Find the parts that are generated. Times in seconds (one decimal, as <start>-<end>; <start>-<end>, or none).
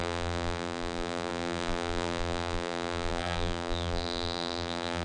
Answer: 0.0-5.0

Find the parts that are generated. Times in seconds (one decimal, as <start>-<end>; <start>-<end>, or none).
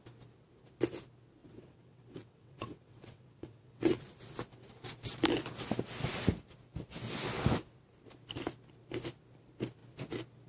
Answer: 1.4-4.1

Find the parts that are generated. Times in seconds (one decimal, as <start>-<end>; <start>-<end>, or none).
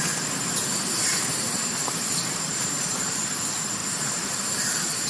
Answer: 1.1-3.2; 3.8-5.1